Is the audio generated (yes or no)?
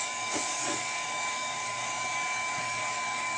yes